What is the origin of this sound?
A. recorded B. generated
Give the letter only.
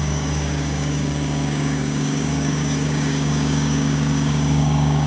B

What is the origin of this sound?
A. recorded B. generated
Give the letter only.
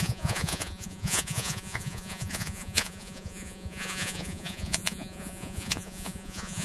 B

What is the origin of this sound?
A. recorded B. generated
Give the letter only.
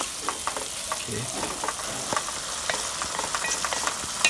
A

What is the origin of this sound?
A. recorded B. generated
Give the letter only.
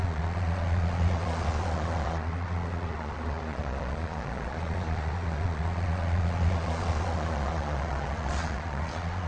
B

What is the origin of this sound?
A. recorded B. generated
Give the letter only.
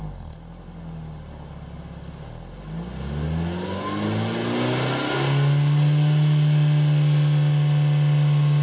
A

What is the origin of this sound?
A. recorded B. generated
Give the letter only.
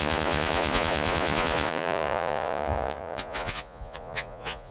B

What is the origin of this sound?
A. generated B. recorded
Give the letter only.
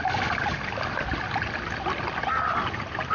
B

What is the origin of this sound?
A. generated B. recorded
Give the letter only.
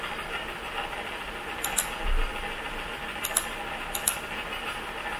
B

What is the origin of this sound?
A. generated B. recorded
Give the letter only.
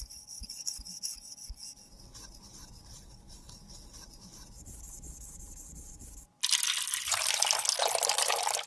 A